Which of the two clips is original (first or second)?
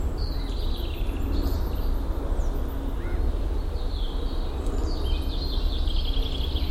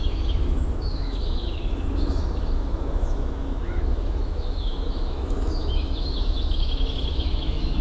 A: first